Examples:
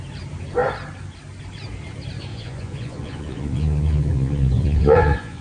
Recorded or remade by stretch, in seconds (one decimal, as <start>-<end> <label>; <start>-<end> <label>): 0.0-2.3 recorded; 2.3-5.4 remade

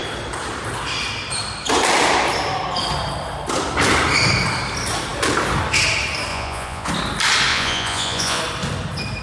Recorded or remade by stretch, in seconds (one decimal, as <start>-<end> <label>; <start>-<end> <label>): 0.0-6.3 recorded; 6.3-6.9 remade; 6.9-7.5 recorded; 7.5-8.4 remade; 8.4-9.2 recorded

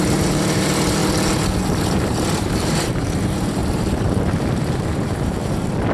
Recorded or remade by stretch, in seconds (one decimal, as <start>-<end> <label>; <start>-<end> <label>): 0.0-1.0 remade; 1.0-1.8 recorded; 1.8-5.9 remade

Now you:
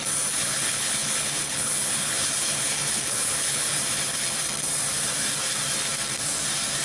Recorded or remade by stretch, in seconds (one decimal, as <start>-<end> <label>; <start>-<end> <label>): 0.0-0.4 recorded; 0.4-3.8 remade; 3.8-6.8 recorded

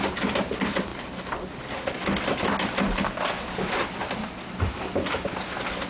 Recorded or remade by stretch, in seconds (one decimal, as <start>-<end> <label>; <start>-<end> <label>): 0.0-5.9 recorded

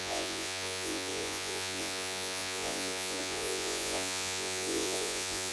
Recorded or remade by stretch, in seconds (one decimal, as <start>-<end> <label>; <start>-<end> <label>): 0.0-5.5 remade

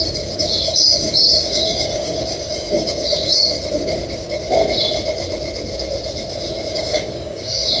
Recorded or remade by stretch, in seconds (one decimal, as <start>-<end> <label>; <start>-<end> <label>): 0.0-4.6 remade; 4.6-6.7 recorded; 6.7-7.8 remade

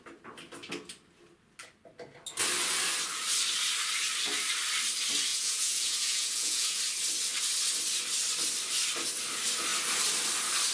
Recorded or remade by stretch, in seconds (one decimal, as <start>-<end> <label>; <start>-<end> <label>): 0.0-5.3 recorded; 5.3-6.8 remade; 6.8-10.7 recorded